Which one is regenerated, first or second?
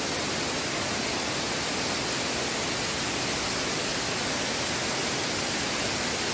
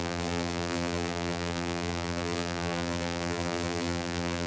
second